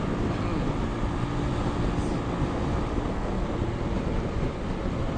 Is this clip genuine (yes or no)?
yes